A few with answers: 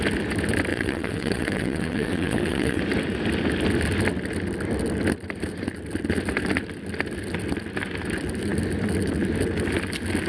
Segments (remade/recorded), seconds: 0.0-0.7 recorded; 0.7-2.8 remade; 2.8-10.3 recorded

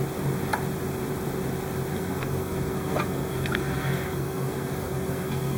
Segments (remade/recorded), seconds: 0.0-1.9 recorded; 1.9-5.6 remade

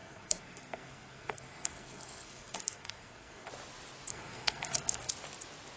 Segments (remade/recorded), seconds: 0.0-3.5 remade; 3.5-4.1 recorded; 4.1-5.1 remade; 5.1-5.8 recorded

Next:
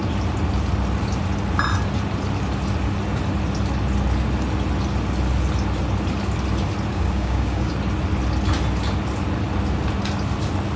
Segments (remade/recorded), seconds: 0.0-6.9 recorded; 6.9-7.7 remade; 7.7-10.8 recorded

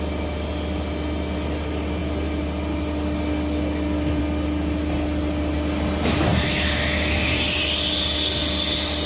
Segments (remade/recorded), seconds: 0.0-9.1 recorded

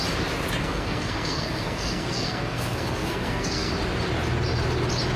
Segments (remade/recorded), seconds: 0.0-0.6 recorded; 0.6-3.7 remade; 3.7-5.2 recorded

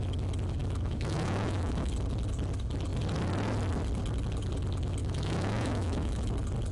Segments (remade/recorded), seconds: 0.0-0.6 recorded; 0.6-1.9 remade; 1.9-5.0 recorded; 5.0-6.3 remade; 6.3-6.7 recorded